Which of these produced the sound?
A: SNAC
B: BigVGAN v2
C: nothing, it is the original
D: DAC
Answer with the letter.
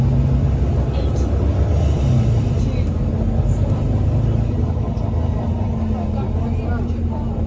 C